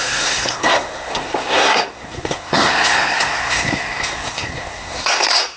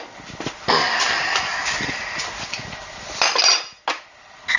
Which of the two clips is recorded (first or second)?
second